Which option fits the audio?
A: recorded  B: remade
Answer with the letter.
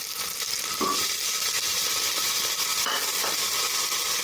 A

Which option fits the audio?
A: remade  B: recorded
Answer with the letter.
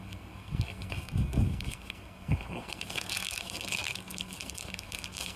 A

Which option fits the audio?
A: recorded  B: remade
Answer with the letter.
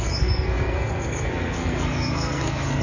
B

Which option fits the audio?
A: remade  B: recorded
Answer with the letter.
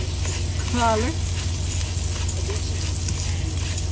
B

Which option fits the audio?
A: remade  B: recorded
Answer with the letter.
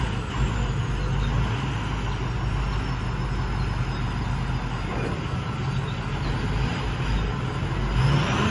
B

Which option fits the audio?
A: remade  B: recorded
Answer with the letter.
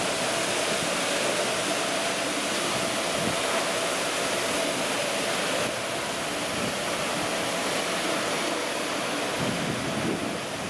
B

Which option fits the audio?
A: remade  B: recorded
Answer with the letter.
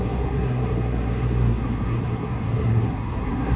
A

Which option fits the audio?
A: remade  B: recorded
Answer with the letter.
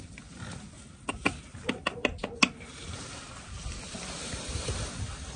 B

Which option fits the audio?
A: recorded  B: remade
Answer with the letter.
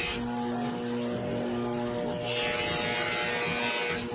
A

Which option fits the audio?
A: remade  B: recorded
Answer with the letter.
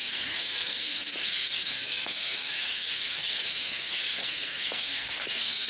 A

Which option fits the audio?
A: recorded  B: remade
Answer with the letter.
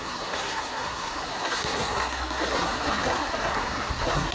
B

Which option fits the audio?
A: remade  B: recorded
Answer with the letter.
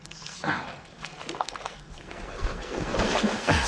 A